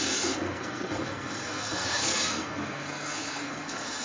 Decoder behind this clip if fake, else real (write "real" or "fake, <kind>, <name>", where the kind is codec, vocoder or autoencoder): fake, codec, SNAC